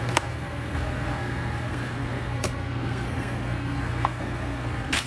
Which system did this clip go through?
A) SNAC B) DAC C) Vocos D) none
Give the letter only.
A